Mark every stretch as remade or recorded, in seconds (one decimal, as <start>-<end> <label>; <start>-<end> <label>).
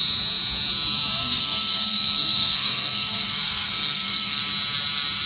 0.0-1.2 recorded; 1.2-4.4 remade; 4.4-5.3 recorded